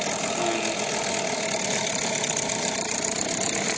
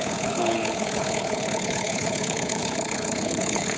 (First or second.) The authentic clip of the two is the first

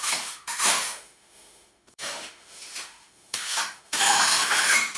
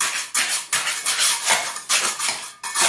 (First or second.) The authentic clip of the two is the second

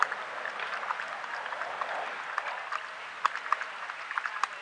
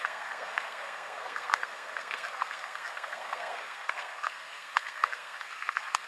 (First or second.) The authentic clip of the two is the first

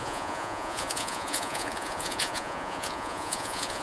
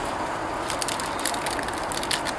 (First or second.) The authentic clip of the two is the second